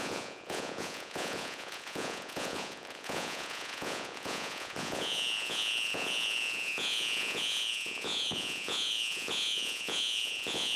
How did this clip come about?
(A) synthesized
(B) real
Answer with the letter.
A